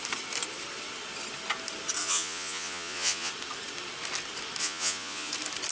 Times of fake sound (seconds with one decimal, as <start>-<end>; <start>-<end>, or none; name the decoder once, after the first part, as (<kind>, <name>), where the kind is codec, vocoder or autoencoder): 2.0-3.3 (vocoder, Vocos); 4.6-5.3